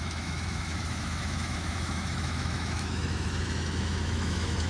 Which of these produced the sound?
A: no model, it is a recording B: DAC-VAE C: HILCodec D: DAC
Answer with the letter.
B